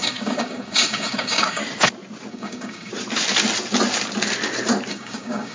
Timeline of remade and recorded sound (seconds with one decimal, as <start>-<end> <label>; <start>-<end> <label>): 0.0-1.6 remade; 1.6-2.3 recorded; 2.3-2.9 remade; 2.9-4.9 recorded; 4.9-5.5 remade